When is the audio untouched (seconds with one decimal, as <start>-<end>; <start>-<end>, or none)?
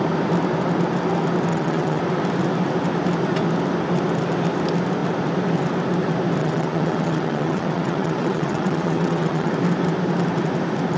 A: 0.0-1.5; 2.0-6.4; 9.5-11.0